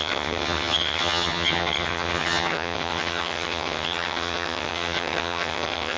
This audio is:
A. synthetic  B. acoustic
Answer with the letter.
A